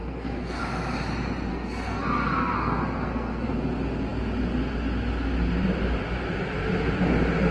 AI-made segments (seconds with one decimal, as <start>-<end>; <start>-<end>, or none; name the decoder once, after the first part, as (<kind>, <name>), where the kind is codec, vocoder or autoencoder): 0.0-0.6 (codec, SNAC); 1.5-3.5